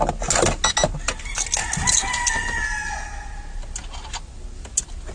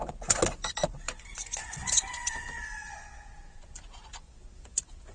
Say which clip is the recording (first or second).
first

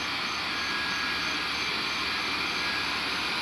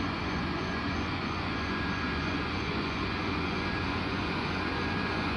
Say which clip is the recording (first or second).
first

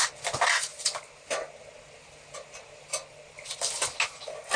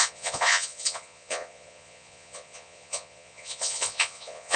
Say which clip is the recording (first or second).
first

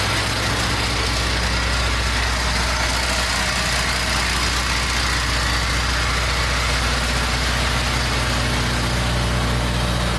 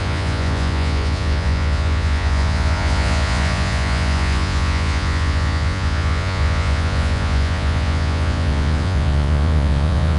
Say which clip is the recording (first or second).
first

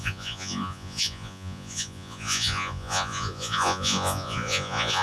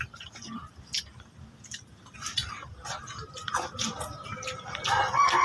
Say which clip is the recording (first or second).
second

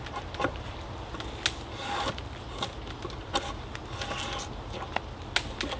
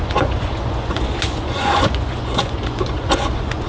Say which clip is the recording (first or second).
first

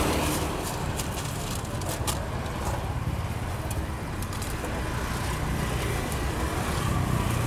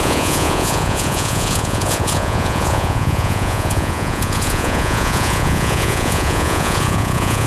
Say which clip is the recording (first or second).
first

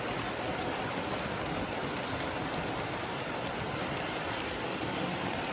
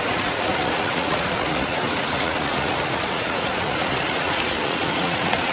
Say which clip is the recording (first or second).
first